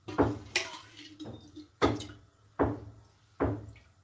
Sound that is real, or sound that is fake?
real